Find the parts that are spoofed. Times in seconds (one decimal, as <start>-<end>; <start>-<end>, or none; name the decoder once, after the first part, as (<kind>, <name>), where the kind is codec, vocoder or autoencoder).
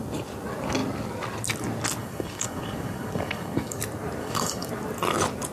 2.0-3.8 (codec, DAC); 4.2-4.7